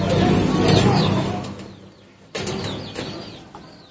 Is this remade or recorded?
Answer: recorded